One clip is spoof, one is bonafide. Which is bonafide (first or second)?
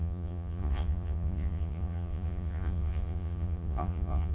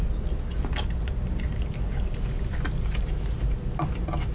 second